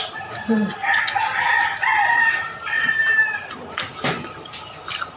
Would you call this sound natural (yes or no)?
no